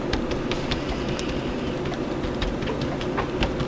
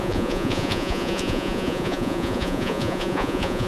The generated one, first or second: second